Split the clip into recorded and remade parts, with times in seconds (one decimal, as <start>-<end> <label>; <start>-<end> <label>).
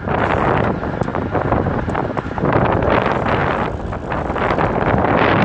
0.0-5.4 recorded